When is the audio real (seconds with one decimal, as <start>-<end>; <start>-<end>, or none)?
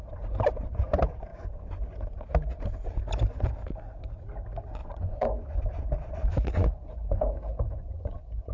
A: 0.0-4.8; 5.6-6.3